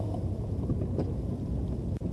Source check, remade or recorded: recorded